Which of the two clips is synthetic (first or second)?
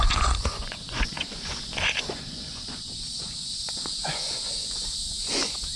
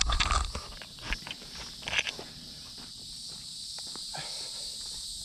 first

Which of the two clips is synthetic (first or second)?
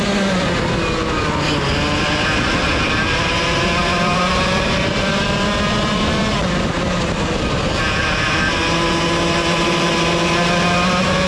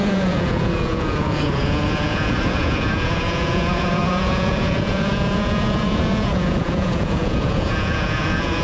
second